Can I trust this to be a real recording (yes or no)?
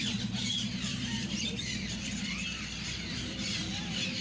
no